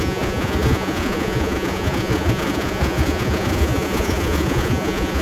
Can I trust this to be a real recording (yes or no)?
no